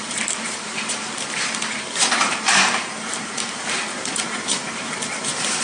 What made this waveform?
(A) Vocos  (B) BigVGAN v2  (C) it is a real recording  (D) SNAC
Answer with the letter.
B